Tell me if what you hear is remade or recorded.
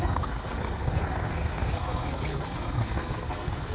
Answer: remade